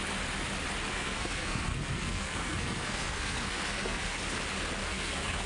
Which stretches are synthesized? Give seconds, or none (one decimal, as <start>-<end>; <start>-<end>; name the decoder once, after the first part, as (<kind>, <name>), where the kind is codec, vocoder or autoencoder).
0.9-4.2 (codec, SNAC); 4.8-5.5